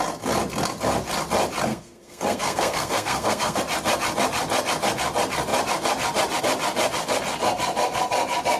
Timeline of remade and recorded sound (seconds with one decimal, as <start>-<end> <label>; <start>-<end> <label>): 0.0-1.7 recorded; 1.7-3.6 remade; 3.6-8.6 recorded